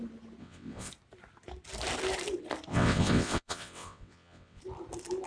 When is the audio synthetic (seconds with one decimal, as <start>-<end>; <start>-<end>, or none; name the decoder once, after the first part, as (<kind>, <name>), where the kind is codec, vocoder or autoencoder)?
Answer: 0.4-0.9 (vocoder, WaveNeXt); 2.7-4.6